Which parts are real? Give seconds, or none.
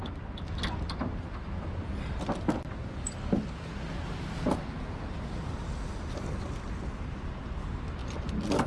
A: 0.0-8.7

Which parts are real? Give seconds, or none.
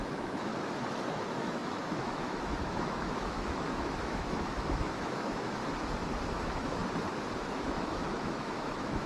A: 0.5-1.1; 5.6-6.3; 6.8-7.4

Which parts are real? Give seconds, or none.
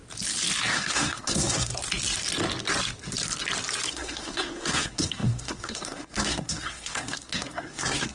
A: 0.0-0.7; 1.7-3.9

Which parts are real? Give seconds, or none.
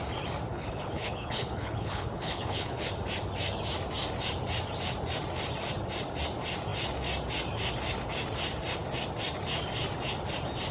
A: 0.0-0.5; 2.9-10.7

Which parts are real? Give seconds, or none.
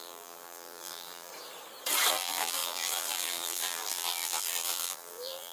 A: 1.3-2.1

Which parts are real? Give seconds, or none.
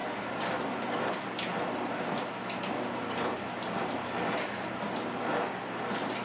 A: 0.0-6.2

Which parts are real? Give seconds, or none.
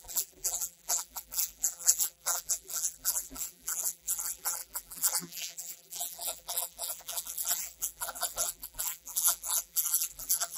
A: none